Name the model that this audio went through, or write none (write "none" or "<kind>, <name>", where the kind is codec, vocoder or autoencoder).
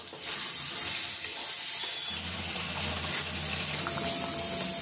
none